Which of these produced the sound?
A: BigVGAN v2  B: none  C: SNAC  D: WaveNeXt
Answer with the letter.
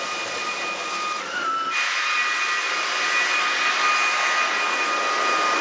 B